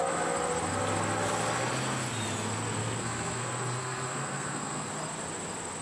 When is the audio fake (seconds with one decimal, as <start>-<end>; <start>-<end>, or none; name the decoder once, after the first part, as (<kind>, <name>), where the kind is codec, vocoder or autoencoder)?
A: 2.8-4.9 (codec, SNAC)